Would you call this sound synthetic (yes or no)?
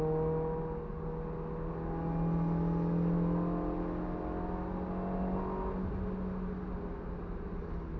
no